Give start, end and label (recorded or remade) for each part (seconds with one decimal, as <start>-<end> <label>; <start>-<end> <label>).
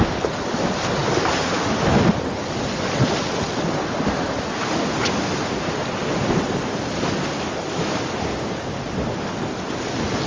0.0-10.3 recorded